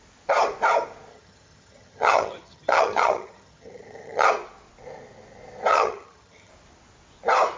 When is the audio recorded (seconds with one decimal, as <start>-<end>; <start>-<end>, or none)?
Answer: 0.0-1.1; 4.3-5.7; 6.5-7.6